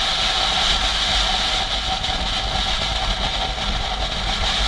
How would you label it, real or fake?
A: real